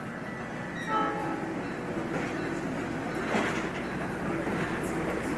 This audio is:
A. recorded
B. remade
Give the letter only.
A